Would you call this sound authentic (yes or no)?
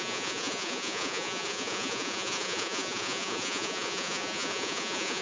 no